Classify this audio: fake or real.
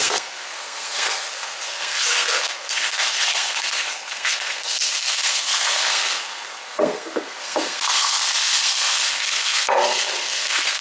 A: fake